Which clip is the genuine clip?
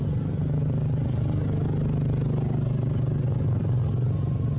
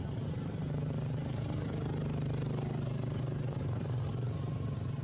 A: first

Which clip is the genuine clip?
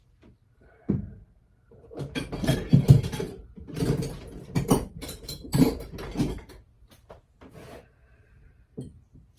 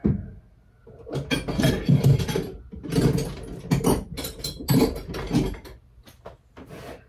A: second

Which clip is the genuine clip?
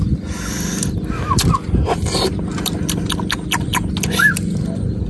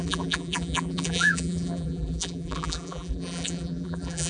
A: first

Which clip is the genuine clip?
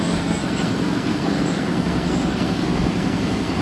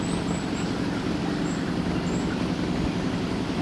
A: second